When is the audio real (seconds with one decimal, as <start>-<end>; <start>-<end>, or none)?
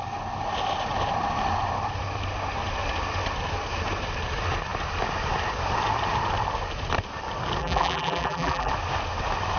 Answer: 0.0-7.6; 8.7-9.6